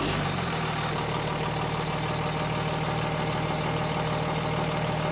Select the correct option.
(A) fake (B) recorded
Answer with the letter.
B